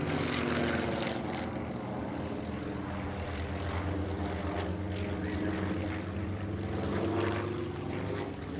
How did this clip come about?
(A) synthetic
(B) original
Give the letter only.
B